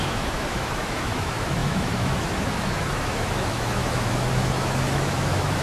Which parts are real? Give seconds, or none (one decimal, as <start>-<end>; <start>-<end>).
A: none